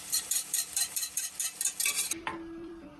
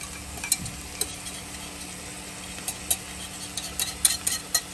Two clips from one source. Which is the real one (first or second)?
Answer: second